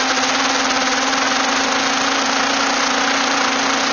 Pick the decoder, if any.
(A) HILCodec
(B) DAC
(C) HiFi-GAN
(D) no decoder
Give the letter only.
D